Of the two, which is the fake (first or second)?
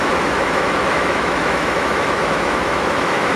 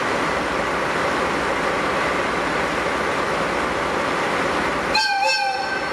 first